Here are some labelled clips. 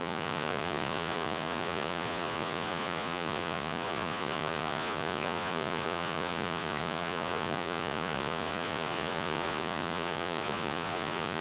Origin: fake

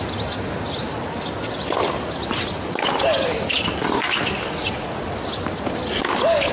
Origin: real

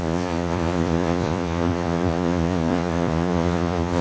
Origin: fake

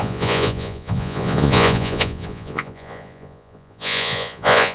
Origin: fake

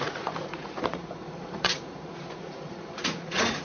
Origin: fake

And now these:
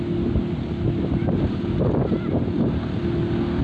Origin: real